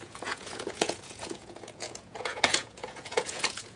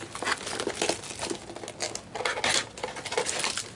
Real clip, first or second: second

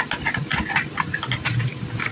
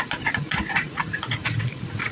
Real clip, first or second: first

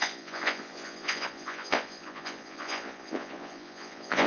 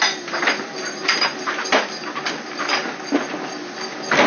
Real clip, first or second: second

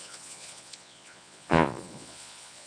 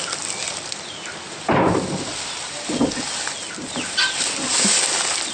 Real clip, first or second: second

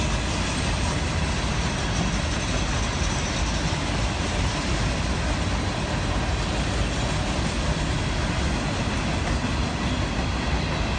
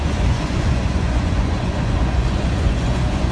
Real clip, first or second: first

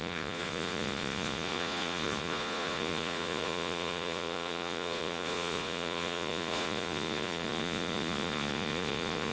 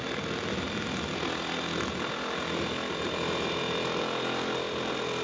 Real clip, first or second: second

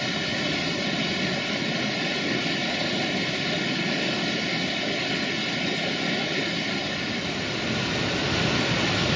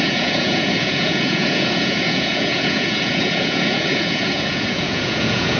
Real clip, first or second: first